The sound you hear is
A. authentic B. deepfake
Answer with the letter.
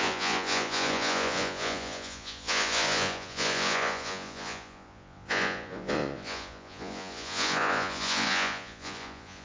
B